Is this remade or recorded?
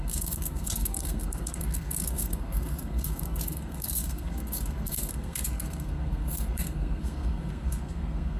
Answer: remade